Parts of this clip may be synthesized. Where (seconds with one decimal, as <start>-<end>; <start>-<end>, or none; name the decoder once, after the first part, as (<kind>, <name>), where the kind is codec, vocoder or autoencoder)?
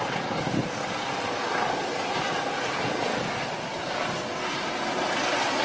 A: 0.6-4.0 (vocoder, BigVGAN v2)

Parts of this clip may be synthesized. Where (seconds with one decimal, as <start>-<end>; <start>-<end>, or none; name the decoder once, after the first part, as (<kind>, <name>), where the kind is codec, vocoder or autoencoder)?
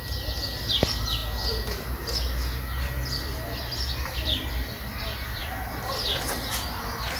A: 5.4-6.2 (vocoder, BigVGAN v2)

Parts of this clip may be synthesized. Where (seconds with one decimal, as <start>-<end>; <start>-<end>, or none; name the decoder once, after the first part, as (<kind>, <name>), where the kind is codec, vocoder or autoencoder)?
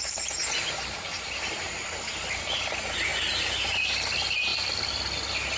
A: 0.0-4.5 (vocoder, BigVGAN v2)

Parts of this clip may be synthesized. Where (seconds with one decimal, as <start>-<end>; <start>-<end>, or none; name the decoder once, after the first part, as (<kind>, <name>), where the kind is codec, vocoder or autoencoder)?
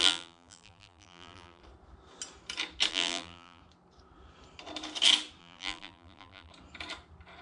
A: 0.0-1.6 (vocoder, BigVGAN v2); 2.9-3.6; 5.4-6.5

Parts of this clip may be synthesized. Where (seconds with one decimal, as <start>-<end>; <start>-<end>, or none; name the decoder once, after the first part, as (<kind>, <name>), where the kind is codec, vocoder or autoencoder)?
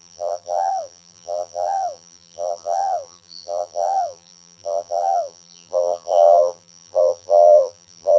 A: 0.0-8.2 (vocoder, BigVGAN v2)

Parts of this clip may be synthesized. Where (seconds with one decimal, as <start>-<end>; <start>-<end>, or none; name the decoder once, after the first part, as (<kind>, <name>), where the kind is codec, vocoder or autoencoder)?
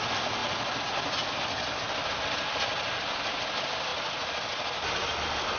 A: none